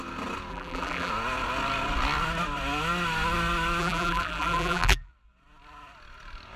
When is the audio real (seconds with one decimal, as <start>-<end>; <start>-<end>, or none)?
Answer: 0.0-0.5; 1.1-3.8; 5.1-6.6